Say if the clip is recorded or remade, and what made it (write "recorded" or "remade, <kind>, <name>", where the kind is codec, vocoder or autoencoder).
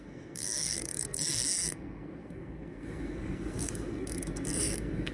remade, codec, SNAC